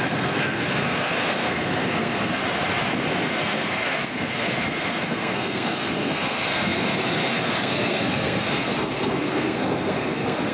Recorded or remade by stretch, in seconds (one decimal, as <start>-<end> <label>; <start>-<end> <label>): 0.0-2.4 remade; 2.4-3.4 recorded; 3.4-10.5 remade